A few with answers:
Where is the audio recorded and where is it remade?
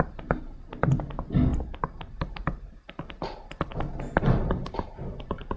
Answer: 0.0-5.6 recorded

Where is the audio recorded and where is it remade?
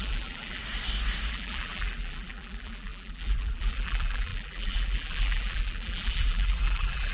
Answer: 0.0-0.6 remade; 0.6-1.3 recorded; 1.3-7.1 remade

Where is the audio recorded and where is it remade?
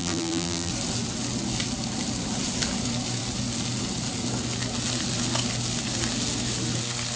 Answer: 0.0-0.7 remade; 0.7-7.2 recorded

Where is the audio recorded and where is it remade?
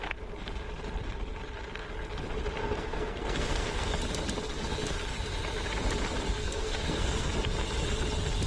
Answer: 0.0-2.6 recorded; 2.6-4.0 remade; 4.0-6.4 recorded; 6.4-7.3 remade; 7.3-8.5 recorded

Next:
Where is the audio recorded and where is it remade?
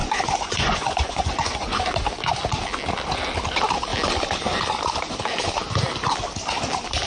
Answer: 0.0-1.8 remade; 1.8-7.1 recorded